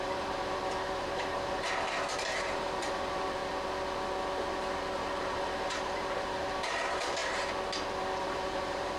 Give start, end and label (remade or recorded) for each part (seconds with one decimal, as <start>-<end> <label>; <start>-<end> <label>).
0.0-3.4 remade; 3.4-5.2 recorded; 5.2-7.2 remade; 7.2-8.2 recorded; 8.2-9.0 remade